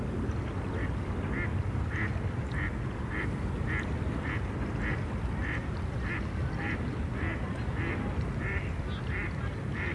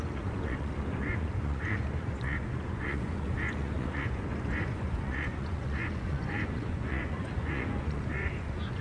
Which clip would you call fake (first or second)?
second